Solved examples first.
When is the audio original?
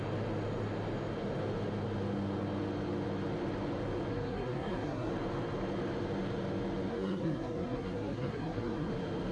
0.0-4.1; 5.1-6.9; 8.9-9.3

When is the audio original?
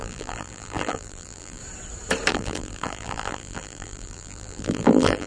1.6-2.3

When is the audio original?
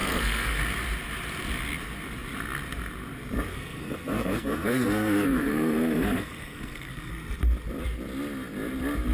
0.6-3.5; 7.1-9.1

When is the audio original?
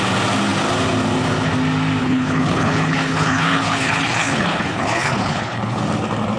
0.0-2.0; 5.8-6.4